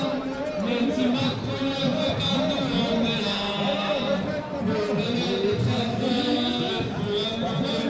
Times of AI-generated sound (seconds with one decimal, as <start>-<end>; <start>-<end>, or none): 5.9-6.7